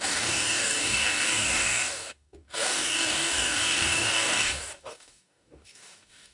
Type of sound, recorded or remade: remade